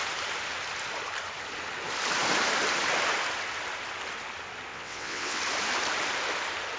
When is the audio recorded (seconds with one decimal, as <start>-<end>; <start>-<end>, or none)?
0.0-4.7; 5.4-6.8